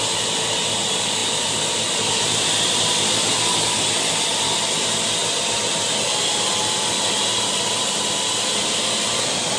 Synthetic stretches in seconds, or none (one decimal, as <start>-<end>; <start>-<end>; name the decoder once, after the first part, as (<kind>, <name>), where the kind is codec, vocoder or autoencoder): 1.2-3.3 (vocoder, BigVGAN v2); 7.8-8.5